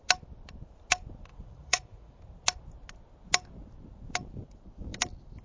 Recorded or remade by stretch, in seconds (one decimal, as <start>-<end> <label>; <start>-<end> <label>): 0.0-1.3 recorded; 1.3-2.2 remade; 2.2-5.4 recorded